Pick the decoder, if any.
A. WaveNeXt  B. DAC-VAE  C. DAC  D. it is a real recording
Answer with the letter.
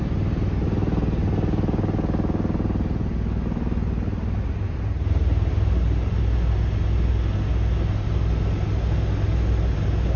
D